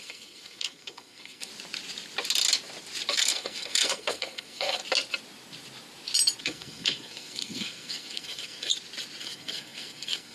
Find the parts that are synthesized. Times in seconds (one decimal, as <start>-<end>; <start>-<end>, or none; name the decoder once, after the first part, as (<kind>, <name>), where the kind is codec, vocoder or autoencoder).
0.0-1.5 (codec, SNAC); 3.1-4.8; 6.4-8.7; 9.2-10.3